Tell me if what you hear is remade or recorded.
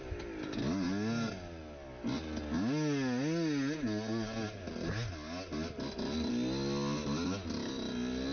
recorded